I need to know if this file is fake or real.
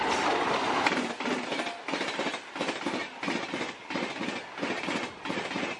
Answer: real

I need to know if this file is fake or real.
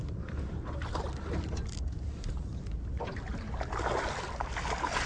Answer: real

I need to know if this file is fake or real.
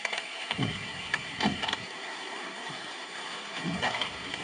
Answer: fake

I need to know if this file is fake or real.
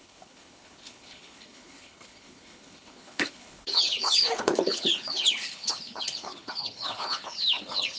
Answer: fake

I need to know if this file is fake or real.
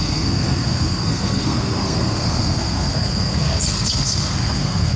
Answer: fake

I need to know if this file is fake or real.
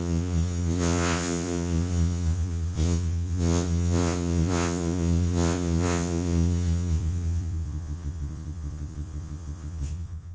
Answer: fake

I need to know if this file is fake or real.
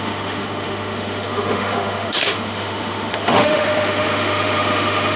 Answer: fake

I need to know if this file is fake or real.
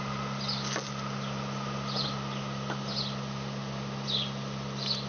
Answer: real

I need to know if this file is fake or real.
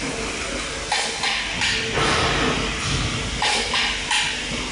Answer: real